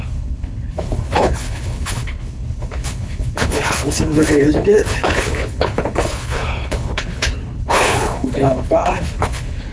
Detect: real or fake fake